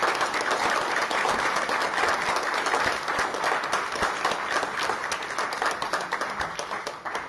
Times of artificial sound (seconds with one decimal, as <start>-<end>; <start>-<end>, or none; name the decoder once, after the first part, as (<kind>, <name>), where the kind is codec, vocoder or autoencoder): none